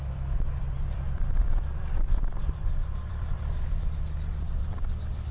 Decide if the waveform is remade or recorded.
remade